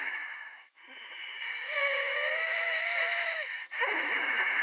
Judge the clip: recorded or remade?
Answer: remade